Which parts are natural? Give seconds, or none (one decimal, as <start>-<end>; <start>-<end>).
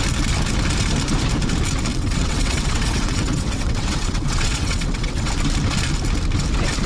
0.0-1.9; 5.3-6.9